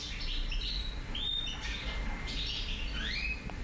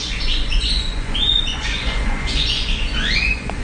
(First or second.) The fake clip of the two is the second